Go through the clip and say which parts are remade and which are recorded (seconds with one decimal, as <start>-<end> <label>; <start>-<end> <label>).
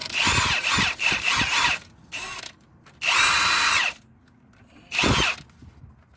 0.0-6.2 recorded